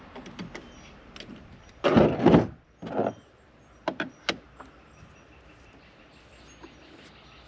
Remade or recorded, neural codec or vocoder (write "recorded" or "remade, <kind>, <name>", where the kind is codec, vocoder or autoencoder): recorded